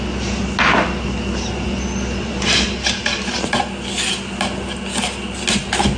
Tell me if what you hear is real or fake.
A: real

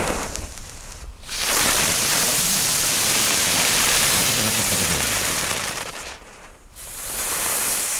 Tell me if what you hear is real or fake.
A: fake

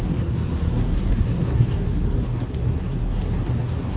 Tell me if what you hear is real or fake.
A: fake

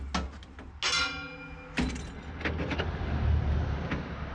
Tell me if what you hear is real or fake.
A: real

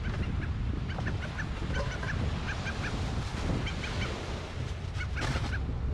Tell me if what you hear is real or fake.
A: real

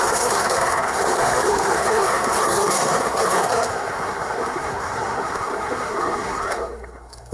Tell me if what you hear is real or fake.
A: fake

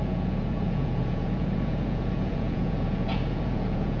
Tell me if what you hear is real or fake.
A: fake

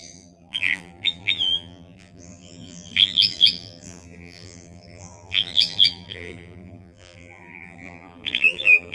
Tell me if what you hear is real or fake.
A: fake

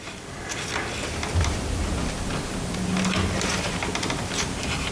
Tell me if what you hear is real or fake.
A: real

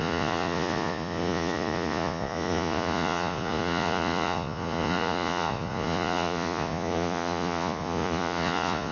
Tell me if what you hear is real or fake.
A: fake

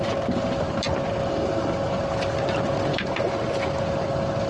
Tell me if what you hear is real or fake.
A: real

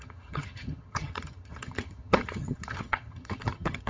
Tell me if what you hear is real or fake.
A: fake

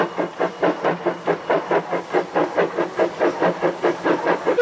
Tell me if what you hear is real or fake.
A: real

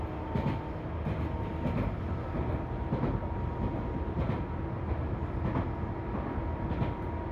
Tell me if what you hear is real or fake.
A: real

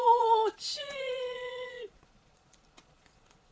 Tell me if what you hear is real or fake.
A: fake